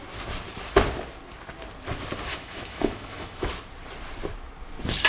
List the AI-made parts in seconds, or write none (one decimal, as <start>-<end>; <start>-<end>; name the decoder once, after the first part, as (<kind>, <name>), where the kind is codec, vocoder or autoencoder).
2.3-3.5 (autoencoder, DAC-VAE)

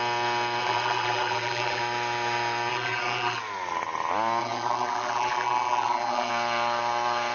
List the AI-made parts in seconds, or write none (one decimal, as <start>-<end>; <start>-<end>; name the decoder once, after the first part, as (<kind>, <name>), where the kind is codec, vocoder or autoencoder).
0.6-1.8 (vocoder, BigVGAN v2); 2.7-3.4; 4.4-6.3